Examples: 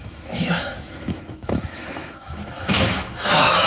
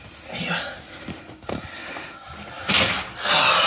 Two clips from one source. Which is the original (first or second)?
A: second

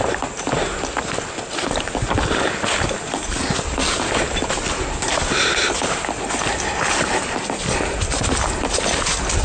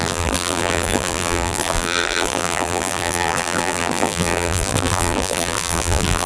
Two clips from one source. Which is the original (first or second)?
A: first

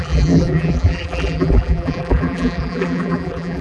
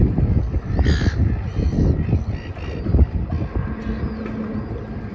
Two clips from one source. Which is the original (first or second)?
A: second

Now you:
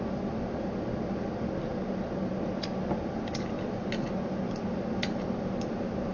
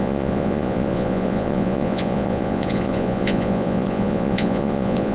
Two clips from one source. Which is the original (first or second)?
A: first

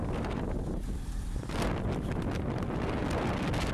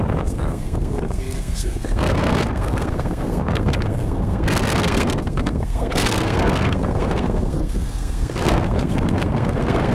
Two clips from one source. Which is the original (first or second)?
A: first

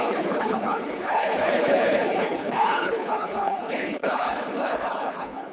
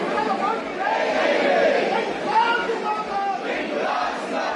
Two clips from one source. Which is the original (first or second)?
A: second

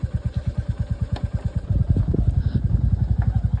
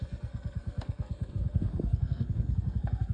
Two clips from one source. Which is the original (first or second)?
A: first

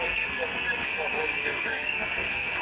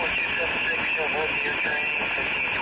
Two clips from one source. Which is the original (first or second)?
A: second